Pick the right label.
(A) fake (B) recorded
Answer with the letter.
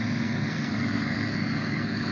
A